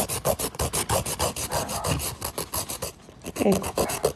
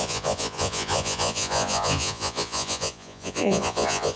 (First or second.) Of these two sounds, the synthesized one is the second